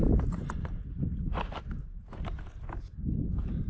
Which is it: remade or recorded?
recorded